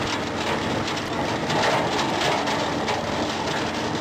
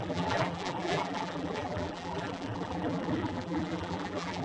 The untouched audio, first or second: first